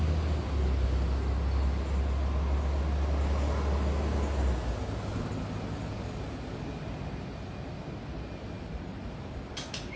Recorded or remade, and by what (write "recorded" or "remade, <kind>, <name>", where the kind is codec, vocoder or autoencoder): recorded